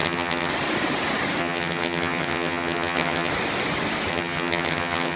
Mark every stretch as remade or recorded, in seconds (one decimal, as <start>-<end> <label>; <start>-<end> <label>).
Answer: 0.0-0.5 remade; 0.5-1.4 recorded; 1.4-3.3 remade; 3.3-4.1 recorded; 4.1-5.2 remade

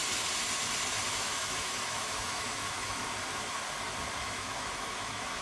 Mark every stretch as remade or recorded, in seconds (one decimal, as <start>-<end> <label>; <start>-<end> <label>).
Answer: 0.0-1.1 recorded; 1.1-3.0 remade; 3.0-4.2 recorded; 4.2-5.4 remade